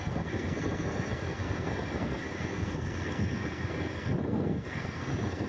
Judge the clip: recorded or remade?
remade